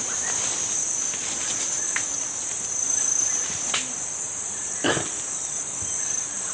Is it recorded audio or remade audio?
recorded